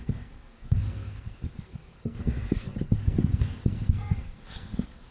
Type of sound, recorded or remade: remade